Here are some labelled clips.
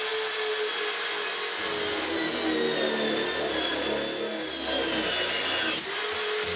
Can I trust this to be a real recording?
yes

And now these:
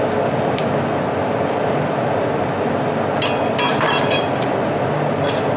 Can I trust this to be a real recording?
yes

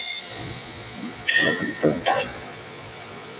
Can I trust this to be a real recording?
no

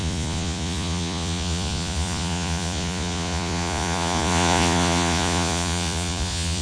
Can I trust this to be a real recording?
no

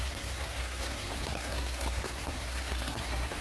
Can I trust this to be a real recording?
no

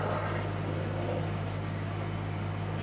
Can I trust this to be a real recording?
yes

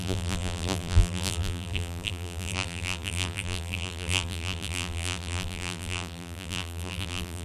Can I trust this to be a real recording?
no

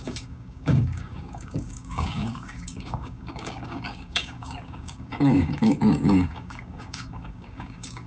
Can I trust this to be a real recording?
no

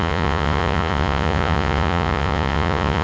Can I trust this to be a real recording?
no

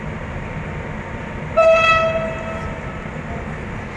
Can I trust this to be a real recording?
yes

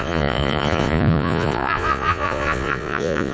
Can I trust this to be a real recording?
no